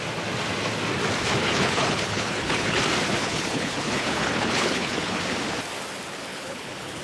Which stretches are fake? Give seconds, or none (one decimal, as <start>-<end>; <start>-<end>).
1.4-2.8; 3.2-5.2; 6.3-7.0